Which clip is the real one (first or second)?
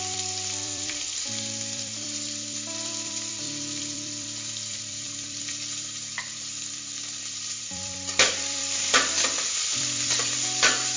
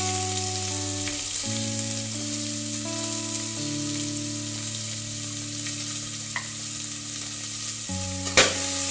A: second